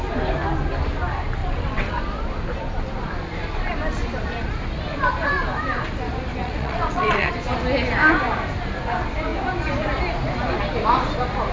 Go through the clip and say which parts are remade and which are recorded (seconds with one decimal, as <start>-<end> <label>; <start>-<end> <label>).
0.0-1.4 recorded; 1.4-2.0 remade; 2.0-6.4 recorded; 6.4-7.3 remade; 7.3-11.5 recorded